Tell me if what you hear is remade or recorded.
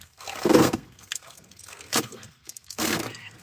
remade